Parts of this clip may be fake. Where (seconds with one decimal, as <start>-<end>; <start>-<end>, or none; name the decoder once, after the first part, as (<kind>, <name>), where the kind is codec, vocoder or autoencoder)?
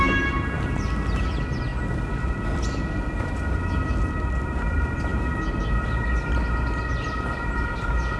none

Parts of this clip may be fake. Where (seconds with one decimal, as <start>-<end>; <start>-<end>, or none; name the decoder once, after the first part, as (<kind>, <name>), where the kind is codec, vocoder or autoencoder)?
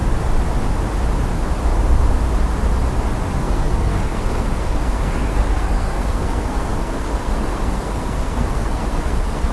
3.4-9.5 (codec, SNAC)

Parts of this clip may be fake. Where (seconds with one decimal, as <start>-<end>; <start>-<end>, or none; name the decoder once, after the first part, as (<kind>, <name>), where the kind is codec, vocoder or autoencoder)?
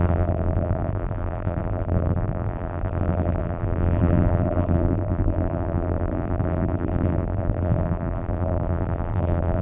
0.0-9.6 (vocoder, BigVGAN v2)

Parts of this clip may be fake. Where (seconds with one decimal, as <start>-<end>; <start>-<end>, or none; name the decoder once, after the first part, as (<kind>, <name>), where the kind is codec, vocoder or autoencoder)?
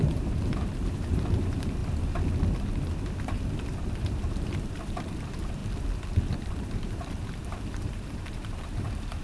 0.0-1.8 (vocoder, BigVGAN v2); 3.2-5.6; 6.4-9.2